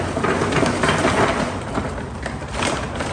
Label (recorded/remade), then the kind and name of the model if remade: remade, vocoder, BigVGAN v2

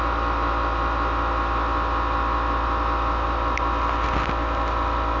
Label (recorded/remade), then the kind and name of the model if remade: recorded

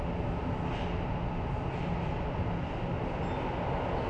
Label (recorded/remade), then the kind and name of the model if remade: recorded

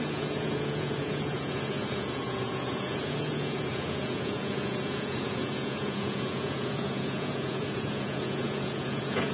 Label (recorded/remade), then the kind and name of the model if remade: remade, vocoder, Vocos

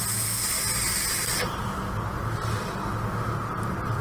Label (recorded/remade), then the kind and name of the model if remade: recorded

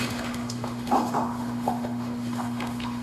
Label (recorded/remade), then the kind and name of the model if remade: remade, autoencoder, DAC-VAE